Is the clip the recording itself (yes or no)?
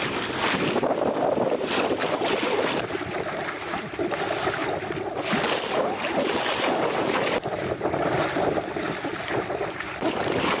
yes